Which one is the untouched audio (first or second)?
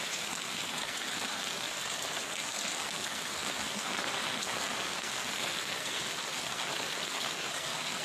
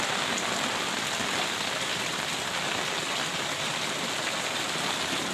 second